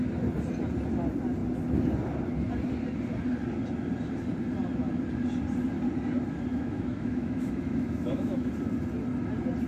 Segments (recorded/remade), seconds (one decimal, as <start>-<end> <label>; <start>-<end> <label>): 0.0-6.5 recorded; 6.5-8.5 remade; 8.5-9.7 recorded